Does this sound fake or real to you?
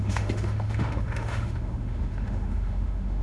fake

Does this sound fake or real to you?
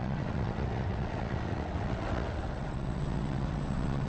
fake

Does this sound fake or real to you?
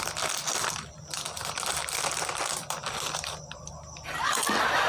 real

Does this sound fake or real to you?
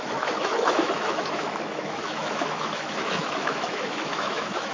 fake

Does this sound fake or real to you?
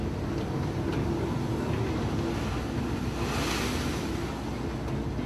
real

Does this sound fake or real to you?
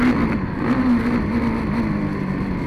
real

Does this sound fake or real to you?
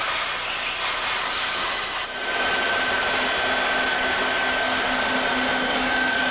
real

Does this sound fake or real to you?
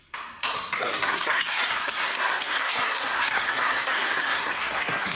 fake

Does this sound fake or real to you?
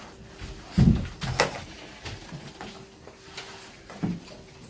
real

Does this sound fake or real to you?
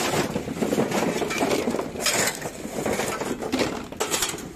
real